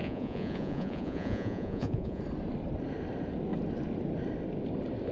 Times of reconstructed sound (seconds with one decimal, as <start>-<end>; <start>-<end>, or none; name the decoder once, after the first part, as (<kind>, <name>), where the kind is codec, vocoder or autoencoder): 0.0-2.2 (vocoder, Vocos)